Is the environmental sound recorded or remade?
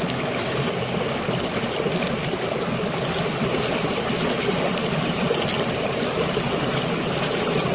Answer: recorded